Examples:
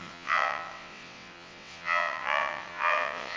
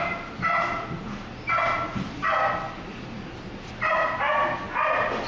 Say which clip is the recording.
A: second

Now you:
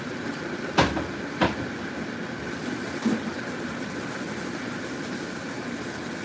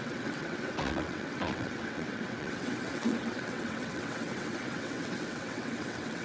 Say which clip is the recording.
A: first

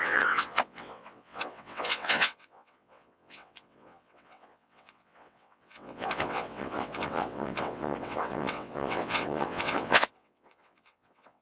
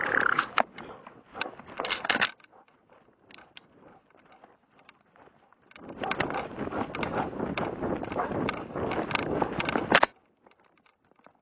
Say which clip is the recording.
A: second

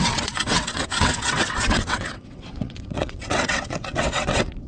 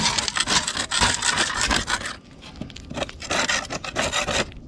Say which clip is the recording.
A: second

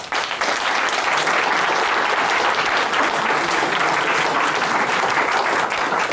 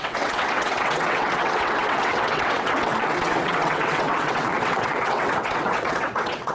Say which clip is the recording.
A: first